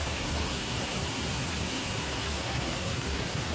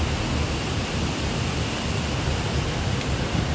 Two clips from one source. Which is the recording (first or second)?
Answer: second